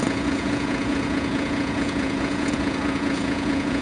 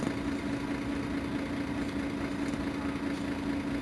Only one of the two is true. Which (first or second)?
second